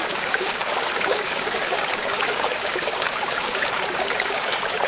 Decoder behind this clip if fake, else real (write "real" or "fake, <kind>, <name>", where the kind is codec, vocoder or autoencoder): fake, codec, DAC